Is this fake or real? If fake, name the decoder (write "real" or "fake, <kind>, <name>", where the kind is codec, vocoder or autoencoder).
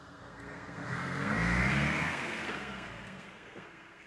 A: fake, codec, SNAC